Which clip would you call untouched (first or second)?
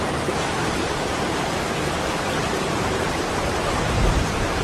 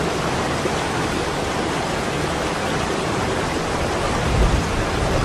second